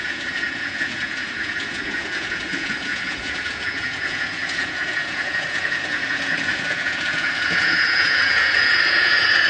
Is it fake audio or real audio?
fake